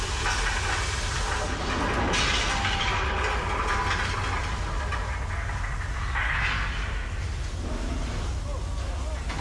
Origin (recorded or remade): recorded